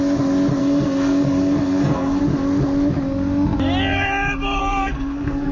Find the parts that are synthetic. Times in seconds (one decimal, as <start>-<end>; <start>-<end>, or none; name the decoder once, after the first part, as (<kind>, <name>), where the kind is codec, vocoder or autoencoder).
0.6-2.2 (codec, SNAC); 4.6-5.5